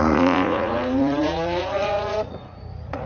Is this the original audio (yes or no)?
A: no